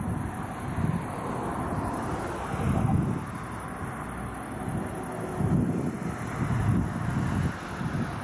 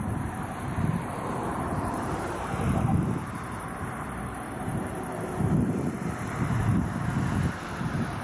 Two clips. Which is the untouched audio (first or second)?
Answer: first